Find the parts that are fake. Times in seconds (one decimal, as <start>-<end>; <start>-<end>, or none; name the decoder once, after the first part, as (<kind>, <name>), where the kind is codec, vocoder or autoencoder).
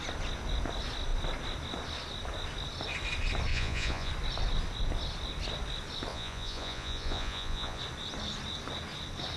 3.5-4.1 (vocoder, Vocos); 6.1-7.8